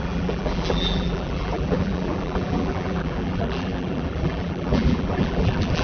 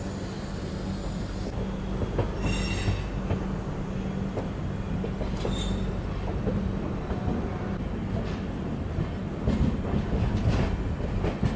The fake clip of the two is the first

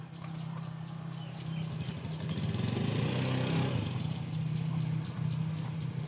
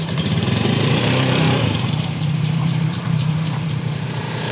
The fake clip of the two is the second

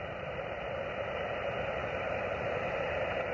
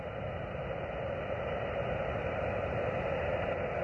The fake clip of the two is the first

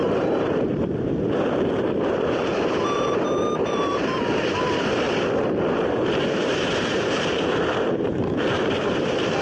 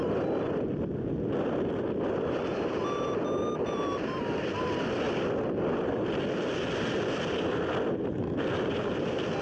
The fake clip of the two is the first